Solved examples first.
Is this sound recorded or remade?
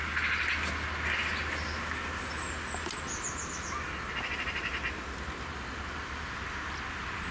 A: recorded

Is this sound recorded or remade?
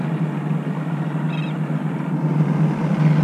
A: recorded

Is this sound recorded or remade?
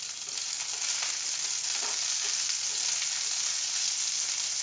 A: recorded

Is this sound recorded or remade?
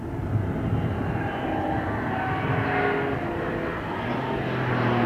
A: recorded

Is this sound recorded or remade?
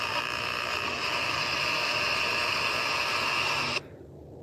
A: recorded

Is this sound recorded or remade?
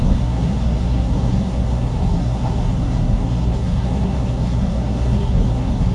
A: remade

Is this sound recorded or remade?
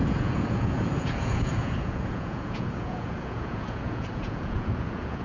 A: remade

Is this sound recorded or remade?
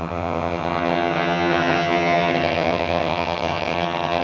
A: remade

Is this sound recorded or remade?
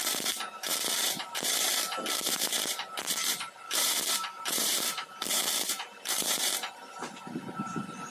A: remade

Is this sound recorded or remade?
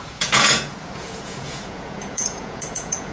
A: remade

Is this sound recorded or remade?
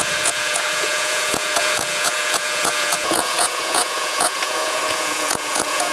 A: remade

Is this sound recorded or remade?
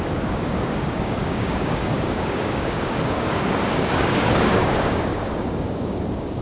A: remade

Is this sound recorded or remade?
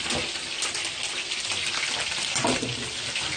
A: recorded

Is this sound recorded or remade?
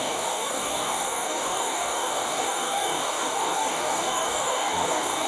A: remade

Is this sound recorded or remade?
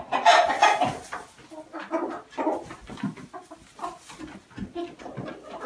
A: recorded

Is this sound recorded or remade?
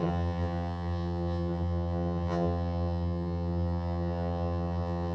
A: remade